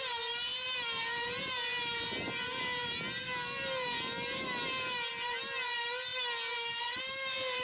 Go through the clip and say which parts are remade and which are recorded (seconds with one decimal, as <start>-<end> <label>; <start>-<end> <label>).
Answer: 0.0-7.6 recorded